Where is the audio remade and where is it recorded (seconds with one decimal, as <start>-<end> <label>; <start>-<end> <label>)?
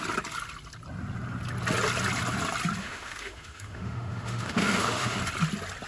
0.0-2.8 recorded; 2.8-5.2 remade; 5.2-5.9 recorded